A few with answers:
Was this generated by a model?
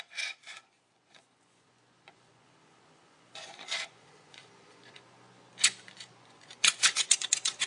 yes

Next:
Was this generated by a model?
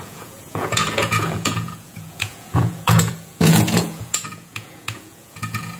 yes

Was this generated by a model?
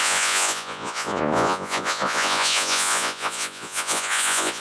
yes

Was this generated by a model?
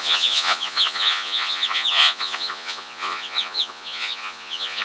yes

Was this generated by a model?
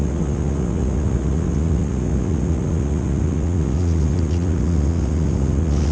yes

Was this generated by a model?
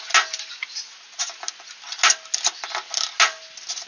no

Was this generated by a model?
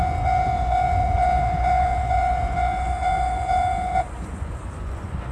yes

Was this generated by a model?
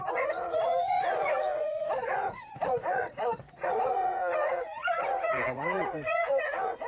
yes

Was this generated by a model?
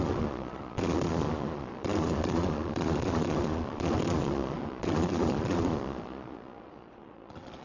yes